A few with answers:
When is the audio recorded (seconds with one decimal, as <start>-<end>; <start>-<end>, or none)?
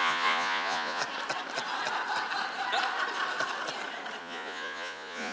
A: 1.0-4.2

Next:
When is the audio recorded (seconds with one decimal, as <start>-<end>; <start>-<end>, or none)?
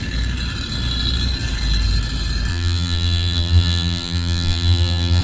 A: 0.0-2.5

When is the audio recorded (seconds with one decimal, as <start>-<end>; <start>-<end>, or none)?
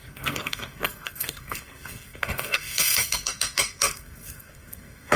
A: none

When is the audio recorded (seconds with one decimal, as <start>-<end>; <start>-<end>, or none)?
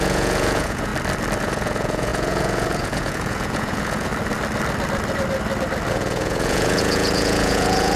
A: 0.9-1.4; 4.1-5.9